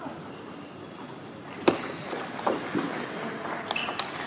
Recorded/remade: recorded